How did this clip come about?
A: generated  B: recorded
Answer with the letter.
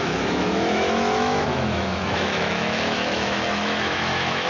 A